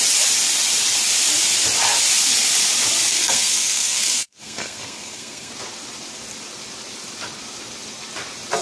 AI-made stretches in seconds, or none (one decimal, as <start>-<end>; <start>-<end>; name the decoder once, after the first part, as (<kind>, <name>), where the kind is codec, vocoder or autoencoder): 3.1-5.5 (codec, SNAC)